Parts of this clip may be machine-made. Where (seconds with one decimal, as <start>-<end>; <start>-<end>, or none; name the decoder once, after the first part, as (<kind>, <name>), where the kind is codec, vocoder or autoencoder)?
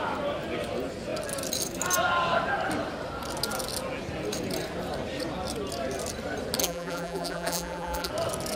6.6-8.1 (vocoder, BigVGAN v2)